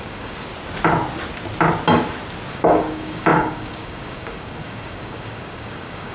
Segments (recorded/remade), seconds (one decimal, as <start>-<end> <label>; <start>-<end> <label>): 0.0-0.5 remade; 0.5-2.5 recorded; 2.5-6.1 remade